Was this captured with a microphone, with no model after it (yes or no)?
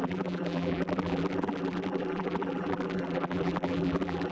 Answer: no